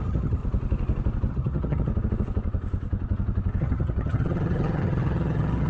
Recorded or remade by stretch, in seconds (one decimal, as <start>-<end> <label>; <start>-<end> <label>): 0.0-0.4 remade; 0.4-1.3 recorded; 1.3-1.9 remade; 1.9-3.6 recorded; 3.6-5.7 remade